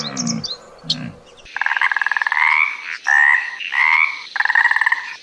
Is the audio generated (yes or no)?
no